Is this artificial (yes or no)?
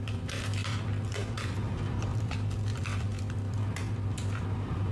yes